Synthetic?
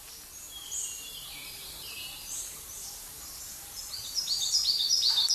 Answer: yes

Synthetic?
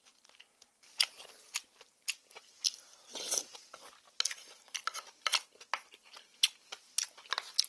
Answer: no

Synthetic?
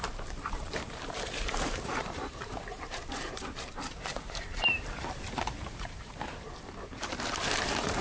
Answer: yes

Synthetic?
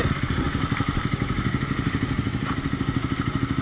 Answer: no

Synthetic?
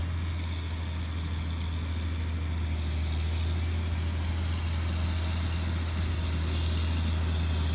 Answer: no